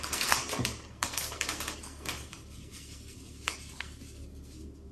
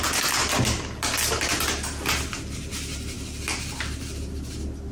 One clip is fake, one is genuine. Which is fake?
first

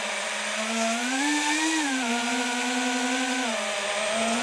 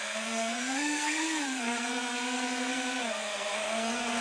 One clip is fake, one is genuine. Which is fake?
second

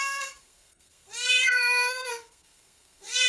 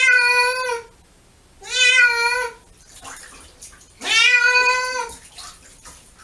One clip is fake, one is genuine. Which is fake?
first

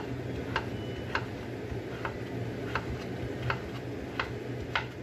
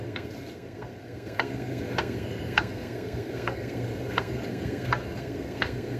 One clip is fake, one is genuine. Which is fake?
second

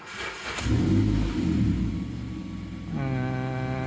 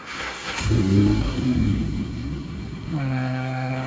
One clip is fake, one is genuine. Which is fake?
second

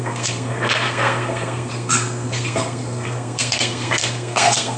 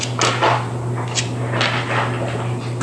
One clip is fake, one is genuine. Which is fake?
first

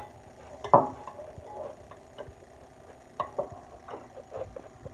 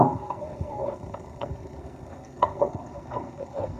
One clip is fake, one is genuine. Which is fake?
second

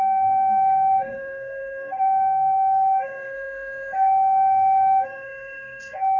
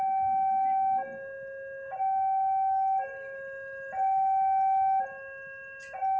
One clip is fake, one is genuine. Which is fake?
first